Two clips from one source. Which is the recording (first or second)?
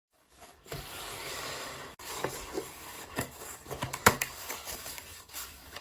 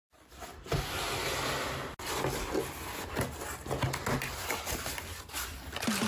second